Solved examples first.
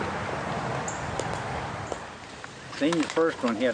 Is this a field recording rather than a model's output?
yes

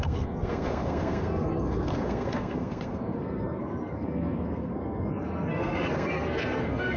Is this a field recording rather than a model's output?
no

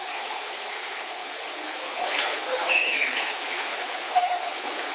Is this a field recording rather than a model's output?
no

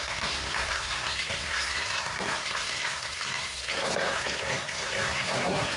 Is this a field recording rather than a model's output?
no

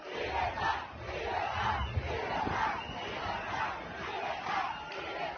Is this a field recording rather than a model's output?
yes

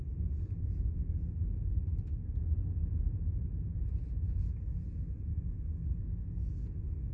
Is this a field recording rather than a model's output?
yes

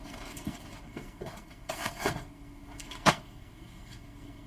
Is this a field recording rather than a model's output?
no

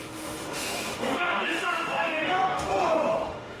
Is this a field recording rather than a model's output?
no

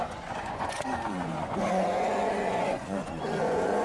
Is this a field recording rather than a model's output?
no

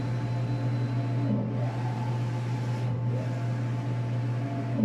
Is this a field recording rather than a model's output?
yes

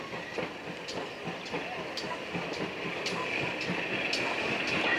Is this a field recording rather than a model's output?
yes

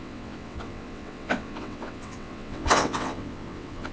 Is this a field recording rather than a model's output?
no